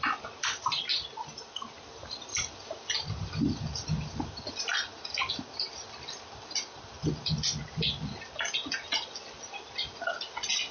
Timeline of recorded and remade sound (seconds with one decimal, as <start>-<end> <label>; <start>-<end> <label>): 0.0-10.7 recorded